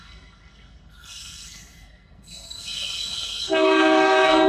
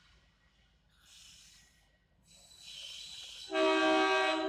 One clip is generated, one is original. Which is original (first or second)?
second